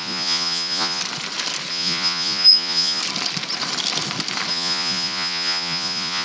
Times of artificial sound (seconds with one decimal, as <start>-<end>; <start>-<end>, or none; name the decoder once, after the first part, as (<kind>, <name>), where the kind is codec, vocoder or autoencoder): 0.0-1.0 (vocoder, Vocos); 1.7-3.0; 4.5-6.2

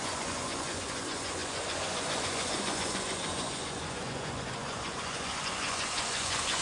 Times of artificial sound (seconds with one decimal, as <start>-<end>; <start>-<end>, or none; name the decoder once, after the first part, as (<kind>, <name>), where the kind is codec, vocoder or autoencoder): 0.0-6.6 (vocoder, Vocos)

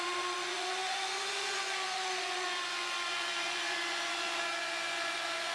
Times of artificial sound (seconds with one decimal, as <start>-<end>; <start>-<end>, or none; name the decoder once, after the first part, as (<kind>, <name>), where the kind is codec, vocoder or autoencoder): 0.0-5.5 (vocoder, Vocos)